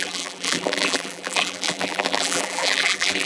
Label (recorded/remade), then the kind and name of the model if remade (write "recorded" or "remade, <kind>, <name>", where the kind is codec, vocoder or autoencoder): remade, vocoder, BigVGAN v2